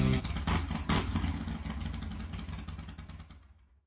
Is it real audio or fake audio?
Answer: real